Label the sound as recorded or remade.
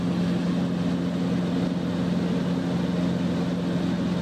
recorded